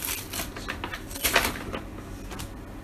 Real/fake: real